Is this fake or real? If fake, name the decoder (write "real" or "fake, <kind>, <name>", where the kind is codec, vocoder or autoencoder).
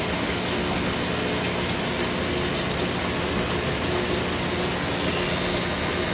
real